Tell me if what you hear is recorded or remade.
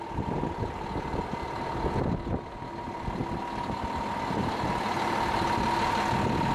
recorded